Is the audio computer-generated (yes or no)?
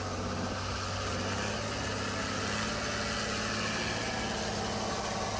no